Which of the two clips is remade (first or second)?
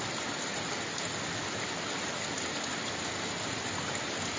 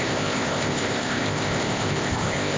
second